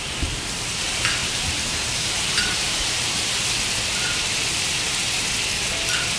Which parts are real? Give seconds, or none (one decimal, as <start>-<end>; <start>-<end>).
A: 0.0-1.2; 3.3-6.2